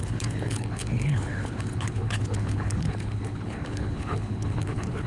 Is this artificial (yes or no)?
yes